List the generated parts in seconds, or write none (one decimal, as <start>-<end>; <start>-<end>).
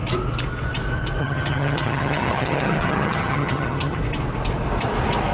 1.2-4.0